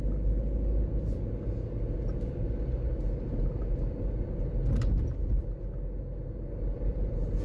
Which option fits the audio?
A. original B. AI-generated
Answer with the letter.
A